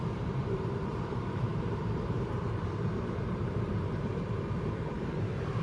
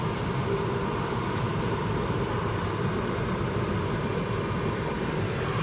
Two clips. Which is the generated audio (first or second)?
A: first